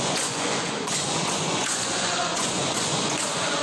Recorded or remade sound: remade